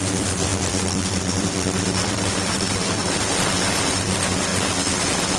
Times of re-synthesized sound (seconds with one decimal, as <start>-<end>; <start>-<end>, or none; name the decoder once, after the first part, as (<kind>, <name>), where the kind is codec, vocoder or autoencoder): 0.0-4.5 (vocoder, BigVGAN v2)